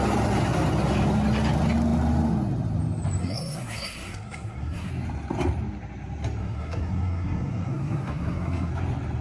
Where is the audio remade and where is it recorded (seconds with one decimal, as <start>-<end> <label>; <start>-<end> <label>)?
0.0-3.2 recorded; 3.2-4.9 remade; 4.9-6.4 recorded; 6.4-8.7 remade; 8.7-9.2 recorded